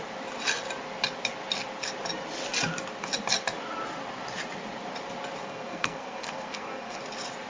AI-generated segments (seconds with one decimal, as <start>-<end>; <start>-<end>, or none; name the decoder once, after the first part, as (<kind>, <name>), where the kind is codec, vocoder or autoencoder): 5.4-7.0 (codec, SNAC)